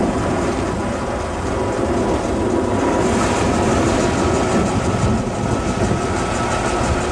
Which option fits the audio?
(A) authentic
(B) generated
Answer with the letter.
A